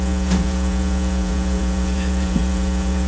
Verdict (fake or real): fake